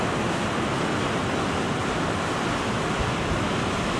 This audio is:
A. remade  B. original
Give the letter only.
B